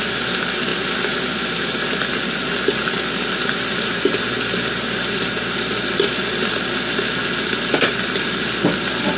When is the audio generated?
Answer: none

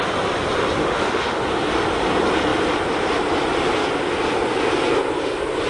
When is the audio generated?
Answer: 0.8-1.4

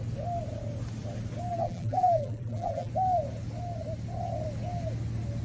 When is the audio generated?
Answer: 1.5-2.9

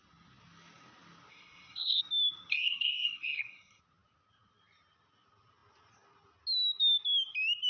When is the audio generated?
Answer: 1.3-2.0; 2.5-3.8

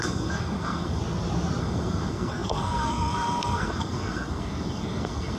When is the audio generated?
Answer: 0.0-1.0; 1.6-5.4

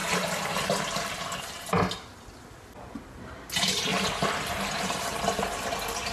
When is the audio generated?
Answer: 0.0-1.6; 3.9-5.3

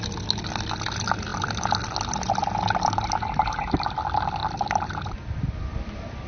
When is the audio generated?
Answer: none